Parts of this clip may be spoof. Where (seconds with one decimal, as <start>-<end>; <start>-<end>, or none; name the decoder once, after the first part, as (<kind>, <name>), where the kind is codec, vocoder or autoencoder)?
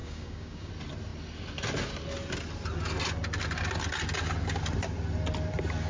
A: 0.0-0.7 (codec, DAC)